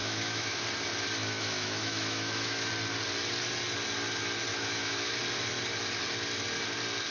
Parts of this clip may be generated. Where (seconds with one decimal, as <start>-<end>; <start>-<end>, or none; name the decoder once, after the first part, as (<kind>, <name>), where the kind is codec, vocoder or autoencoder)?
0.0-0.6 (autoencoder, DAC-VAE); 1.2-2.7; 4.5-5.2